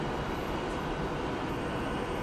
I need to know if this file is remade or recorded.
remade